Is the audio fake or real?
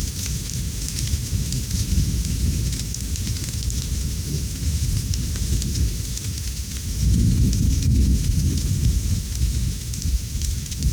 fake